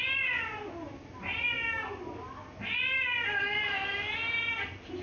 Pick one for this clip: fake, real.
real